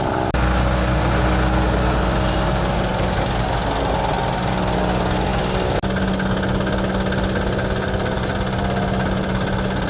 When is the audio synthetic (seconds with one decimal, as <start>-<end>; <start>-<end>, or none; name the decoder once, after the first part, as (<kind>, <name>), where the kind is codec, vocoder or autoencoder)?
none

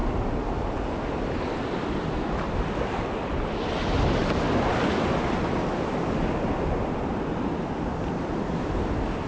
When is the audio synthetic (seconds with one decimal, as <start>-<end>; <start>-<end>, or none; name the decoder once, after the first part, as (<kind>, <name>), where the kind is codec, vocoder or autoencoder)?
none

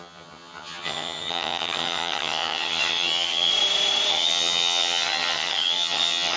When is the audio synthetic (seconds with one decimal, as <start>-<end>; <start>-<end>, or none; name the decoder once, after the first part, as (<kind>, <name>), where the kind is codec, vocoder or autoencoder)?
0.0-3.5 (vocoder, HiFi-GAN); 4.1-6.4

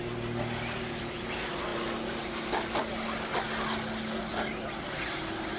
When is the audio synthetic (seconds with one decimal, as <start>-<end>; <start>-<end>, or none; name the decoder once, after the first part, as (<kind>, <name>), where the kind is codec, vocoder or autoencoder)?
none

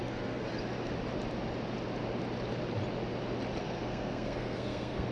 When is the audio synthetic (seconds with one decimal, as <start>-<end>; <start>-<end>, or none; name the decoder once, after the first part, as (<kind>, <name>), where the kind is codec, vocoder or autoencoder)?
0.0-0.5 (codec, SNAC); 3.6-5.1

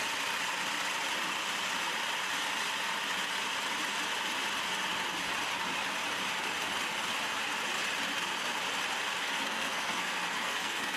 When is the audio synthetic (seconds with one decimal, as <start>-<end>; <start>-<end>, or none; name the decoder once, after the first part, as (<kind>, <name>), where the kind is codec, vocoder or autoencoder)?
9.2-11.0 (codec, SNAC)